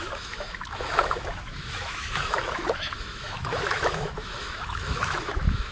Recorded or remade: remade